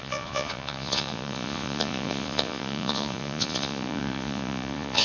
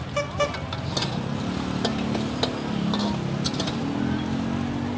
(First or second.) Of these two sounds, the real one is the second